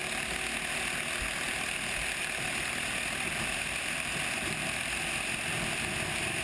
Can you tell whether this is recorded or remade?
recorded